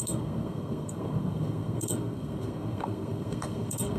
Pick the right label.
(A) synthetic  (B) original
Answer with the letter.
A